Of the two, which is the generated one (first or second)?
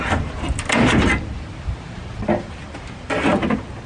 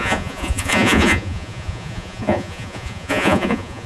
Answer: second